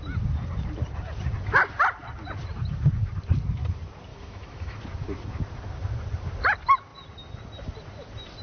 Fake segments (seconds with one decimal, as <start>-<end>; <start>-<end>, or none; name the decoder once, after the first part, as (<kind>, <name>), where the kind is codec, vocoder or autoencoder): 4.1-4.8 (autoencoder, DAC-VAE)